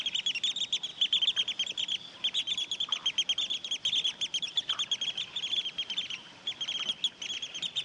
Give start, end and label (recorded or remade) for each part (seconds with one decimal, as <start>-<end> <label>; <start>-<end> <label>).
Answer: 0.0-7.8 recorded